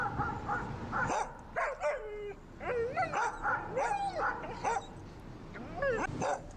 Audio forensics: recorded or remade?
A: recorded